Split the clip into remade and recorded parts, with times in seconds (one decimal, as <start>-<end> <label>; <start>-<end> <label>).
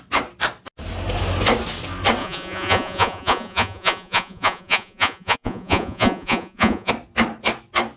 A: 0.0-2.2 recorded; 2.2-6.9 remade; 6.9-8.0 recorded